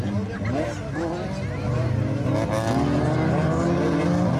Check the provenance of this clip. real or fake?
real